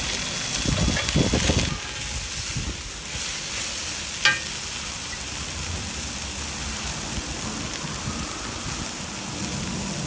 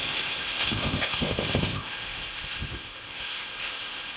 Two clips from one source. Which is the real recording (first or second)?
first